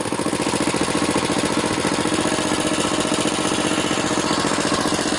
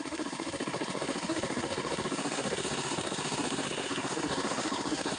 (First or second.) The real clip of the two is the first